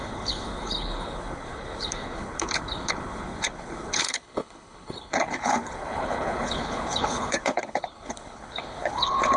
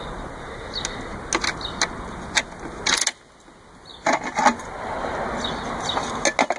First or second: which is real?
second